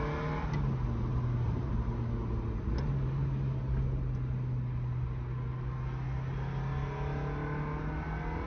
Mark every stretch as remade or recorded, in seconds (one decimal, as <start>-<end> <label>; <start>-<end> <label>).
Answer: 0.0-1.1 recorded; 1.1-1.7 remade; 1.7-8.5 recorded